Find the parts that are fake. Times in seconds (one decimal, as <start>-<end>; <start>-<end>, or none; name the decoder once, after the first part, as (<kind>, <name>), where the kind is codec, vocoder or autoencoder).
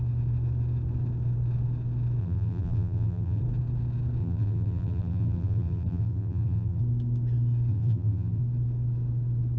2.2-3.4 (vocoder, BigVGAN v2); 4.2-6.8; 7.7-8.4